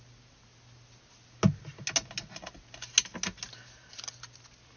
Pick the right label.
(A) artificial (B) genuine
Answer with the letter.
B